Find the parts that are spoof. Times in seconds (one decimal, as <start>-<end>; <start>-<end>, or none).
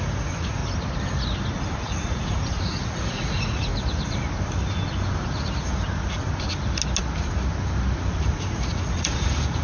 0.0-0.6; 1.8-3.7; 8.2-9.6